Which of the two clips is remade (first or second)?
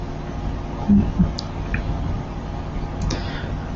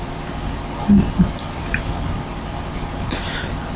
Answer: second